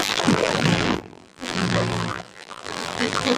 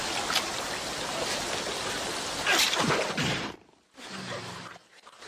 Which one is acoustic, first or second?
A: second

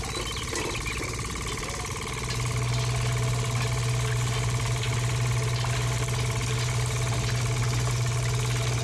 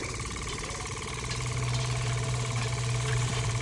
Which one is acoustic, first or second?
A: first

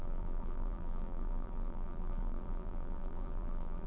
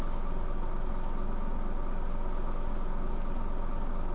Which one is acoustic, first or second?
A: second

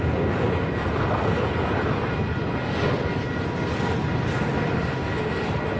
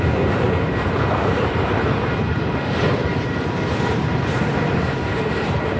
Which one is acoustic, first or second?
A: first